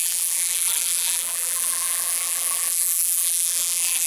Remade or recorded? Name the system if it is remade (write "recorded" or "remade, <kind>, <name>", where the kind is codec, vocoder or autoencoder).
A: remade, vocoder, BigVGAN v2